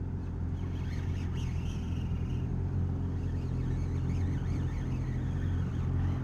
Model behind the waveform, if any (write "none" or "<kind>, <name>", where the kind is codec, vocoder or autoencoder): none